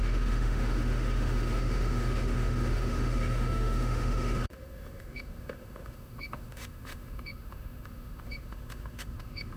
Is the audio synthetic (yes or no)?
yes